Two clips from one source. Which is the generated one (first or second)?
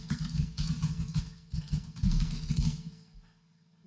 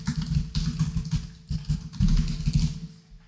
first